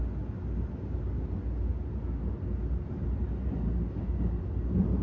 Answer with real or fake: real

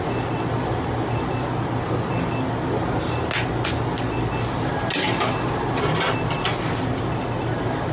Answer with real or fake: real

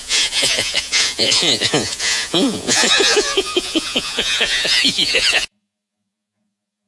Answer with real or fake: fake